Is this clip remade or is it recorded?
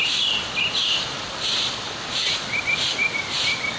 recorded